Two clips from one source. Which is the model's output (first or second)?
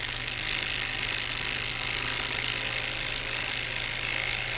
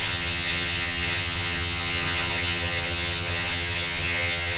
second